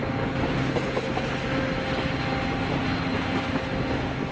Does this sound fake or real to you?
real